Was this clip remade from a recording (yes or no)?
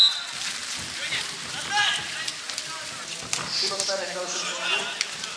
no